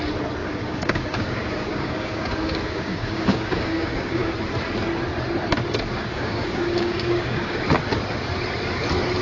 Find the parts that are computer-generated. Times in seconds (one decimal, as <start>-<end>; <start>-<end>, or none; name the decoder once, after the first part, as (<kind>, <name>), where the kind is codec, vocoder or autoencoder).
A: 0.4-4.3 (codec, DAC); 6.1-7.6